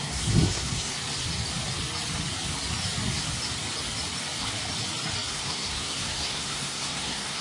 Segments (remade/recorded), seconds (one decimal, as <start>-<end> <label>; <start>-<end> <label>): 0.0-0.9 remade; 0.9-5.3 recorded; 5.3-7.4 remade